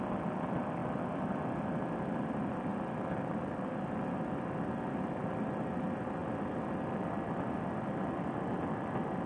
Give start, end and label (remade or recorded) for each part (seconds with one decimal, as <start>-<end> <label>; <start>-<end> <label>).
0.0-9.3 recorded